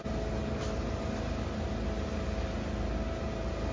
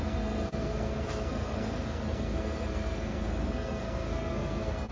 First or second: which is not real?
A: second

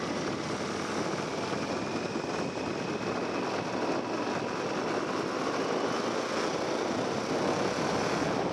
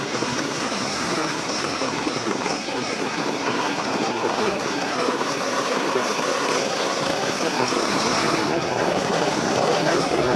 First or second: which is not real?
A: second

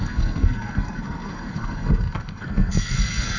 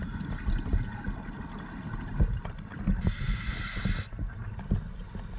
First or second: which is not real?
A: first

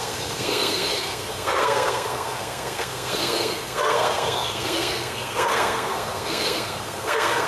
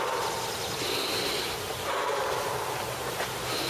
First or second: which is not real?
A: first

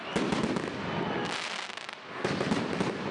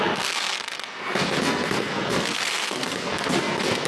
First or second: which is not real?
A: second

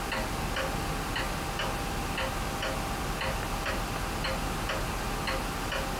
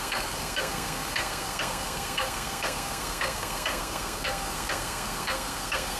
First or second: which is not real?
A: second